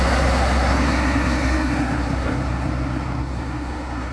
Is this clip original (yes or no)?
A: no